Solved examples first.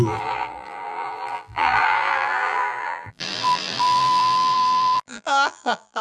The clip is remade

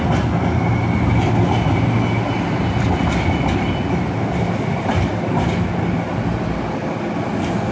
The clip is recorded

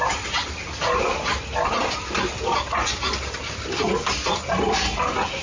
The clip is recorded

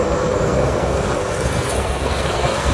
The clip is remade